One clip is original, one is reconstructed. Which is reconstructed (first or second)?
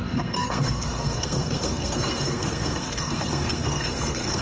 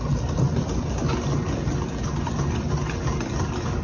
first